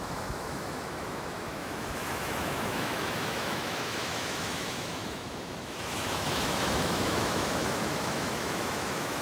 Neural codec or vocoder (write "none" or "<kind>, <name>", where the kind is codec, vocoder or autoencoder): autoencoder, DAC-VAE